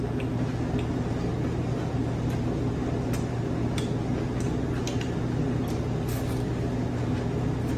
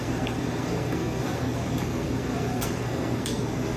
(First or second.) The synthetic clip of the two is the second